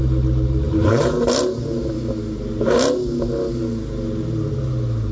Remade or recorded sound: recorded